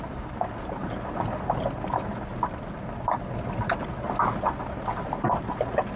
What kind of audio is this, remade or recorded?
recorded